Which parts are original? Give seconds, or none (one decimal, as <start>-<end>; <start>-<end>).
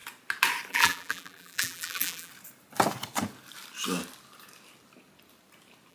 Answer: 0.0-0.7; 2.3-5.9